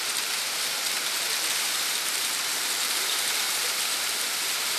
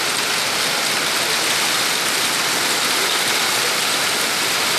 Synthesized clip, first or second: first